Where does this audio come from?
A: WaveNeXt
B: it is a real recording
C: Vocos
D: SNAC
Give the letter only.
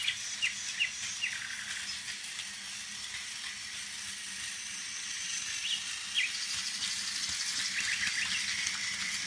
B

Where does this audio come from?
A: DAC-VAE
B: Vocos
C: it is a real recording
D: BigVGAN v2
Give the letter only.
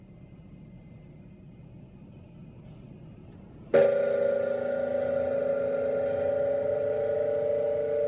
C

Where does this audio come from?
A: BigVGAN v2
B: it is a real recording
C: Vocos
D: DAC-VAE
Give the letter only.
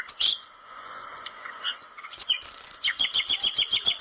C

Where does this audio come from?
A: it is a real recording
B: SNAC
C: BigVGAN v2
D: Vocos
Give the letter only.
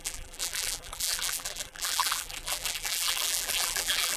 C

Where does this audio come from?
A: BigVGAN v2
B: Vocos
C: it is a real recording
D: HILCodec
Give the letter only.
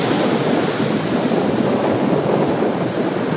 C